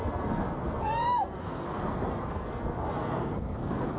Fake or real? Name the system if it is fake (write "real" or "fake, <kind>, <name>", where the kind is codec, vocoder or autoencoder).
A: fake, codec, SNAC